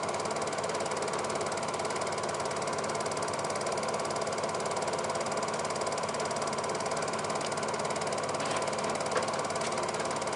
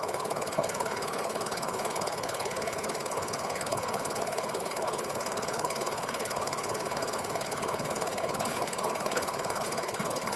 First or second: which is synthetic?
second